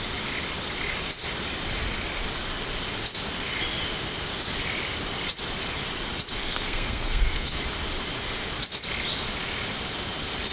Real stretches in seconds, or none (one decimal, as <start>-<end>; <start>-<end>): 0.0-6.4; 7.6-10.5

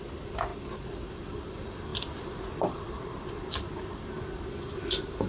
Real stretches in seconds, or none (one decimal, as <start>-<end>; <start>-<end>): 0.0-5.3

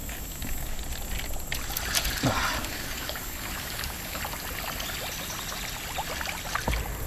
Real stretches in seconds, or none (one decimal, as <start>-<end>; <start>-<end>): 0.8-2.6; 4.2-7.1

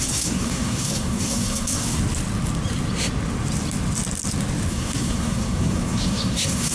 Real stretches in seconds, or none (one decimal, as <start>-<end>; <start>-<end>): 2.0-4.7

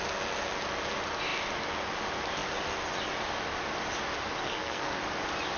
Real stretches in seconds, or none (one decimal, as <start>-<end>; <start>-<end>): 0.0-4.4; 5.0-5.6